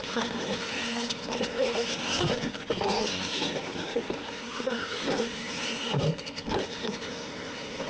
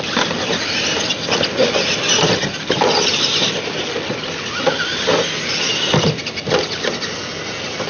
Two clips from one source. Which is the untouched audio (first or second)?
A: second